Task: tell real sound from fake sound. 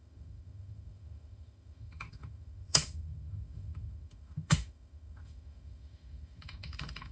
fake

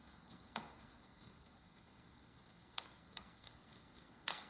fake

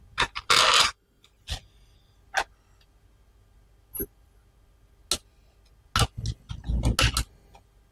real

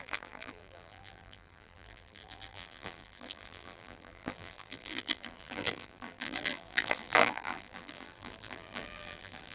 fake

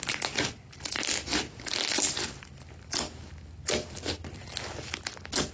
real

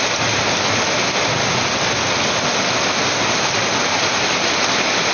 real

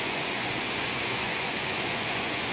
fake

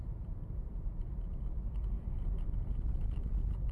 real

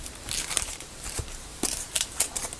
fake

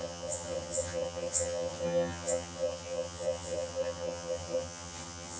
fake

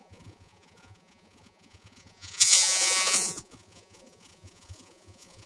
fake